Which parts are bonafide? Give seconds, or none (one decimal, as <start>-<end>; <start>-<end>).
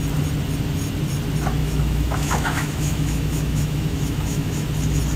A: 0.0-1.6; 4.7-5.2